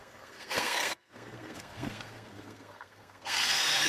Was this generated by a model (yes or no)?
yes